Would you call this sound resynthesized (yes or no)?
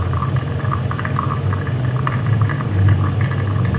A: no